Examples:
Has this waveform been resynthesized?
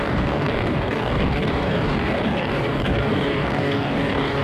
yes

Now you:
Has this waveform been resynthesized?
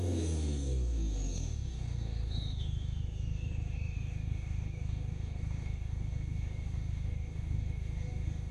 yes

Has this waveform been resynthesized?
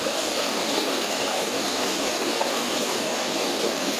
yes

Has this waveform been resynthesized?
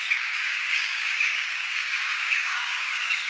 yes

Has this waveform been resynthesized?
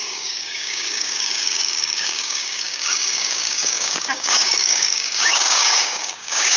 yes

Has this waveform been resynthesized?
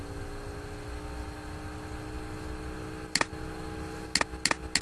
no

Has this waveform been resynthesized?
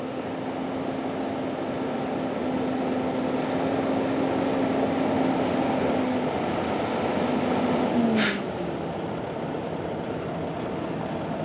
no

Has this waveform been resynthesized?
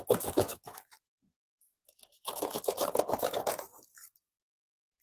yes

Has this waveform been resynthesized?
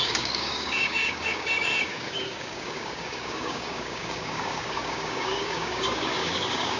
yes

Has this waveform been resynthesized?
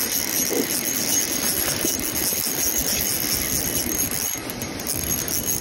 no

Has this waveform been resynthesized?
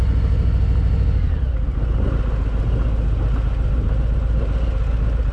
no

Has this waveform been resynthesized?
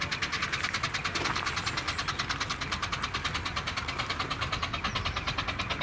no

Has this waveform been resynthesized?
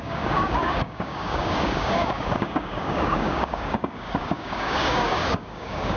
yes